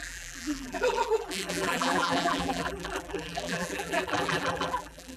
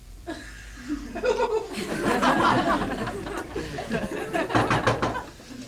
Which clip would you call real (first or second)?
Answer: second